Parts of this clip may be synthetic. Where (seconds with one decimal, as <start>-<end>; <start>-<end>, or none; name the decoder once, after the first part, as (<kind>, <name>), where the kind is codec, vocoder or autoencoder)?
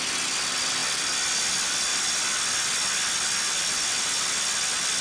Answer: none